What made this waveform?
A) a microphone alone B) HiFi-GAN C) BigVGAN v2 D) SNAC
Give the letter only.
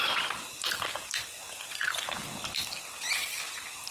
A